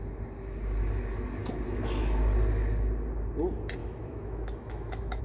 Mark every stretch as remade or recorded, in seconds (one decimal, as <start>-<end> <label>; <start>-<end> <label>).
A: 0.0-3.8 recorded; 3.8-5.2 remade